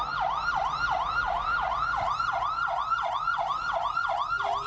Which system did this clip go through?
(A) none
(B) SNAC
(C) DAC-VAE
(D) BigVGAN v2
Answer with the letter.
A